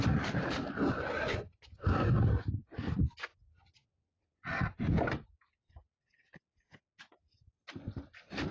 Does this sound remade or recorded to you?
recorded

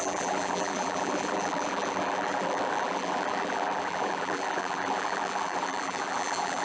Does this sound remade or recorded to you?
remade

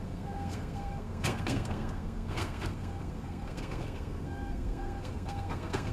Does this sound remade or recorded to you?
remade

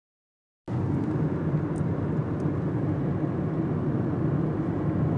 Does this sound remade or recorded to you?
recorded